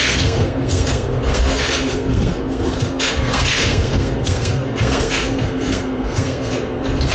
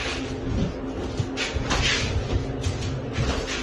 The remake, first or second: first